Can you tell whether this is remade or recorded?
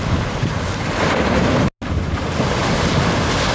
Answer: recorded